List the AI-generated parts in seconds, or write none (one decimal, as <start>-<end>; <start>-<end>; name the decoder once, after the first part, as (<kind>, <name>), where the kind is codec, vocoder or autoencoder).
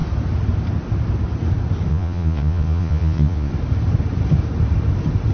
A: 1.9-3.5 (vocoder, Vocos)